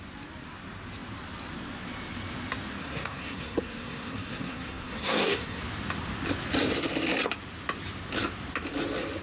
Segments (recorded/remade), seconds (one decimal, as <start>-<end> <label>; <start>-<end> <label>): 0.0-2.8 recorded; 2.8-5.6 remade; 5.6-9.2 recorded